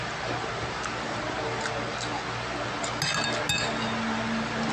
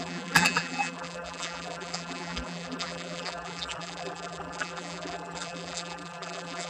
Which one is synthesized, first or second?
second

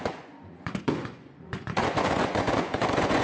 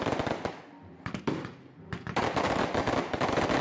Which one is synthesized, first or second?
first